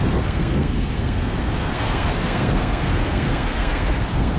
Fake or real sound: fake